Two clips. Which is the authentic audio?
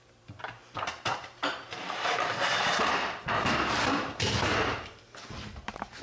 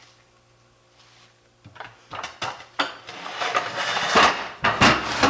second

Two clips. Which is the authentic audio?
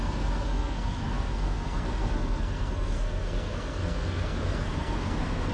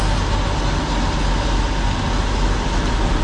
second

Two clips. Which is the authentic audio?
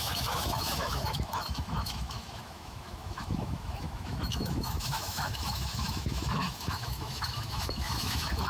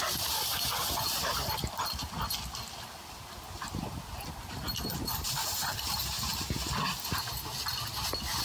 second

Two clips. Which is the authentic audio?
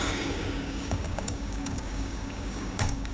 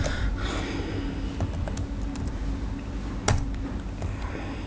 second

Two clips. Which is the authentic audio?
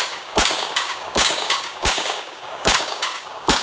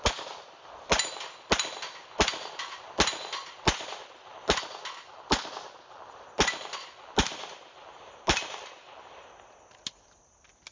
second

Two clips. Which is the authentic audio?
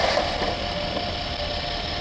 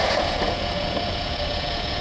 first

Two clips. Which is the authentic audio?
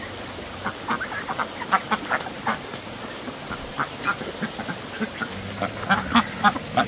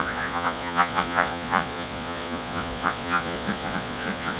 first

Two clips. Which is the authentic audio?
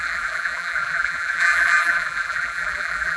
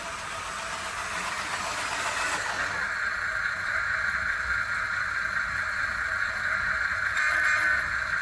second